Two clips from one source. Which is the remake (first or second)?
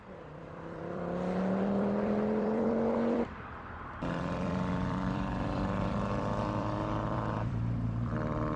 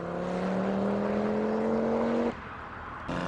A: first